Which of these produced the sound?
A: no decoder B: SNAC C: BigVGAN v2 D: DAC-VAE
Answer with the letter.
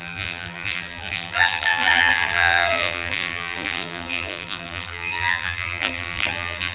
C